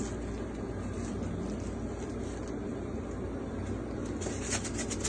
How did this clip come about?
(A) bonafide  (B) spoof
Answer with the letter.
A